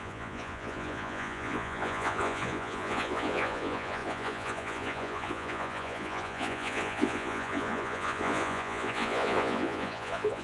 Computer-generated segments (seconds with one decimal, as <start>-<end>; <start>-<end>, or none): 0.0-10.4